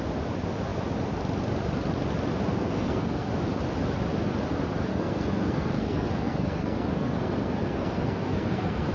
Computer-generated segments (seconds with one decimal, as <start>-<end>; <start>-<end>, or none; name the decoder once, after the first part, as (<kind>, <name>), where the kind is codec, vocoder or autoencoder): 2.5-3.3 (codec, SNAC); 4.9-8.9